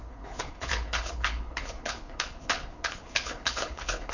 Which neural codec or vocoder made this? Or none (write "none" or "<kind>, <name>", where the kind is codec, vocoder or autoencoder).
codec, HILCodec